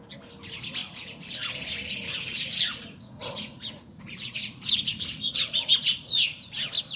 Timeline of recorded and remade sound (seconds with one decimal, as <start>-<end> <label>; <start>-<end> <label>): 0.0-0.8 recorded; 0.8-1.3 remade; 1.3-2.3 recorded; 2.3-6.5 remade; 6.5-7.0 recorded